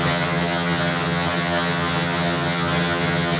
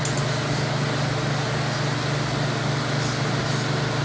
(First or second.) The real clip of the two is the second